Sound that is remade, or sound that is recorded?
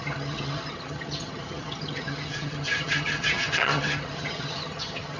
remade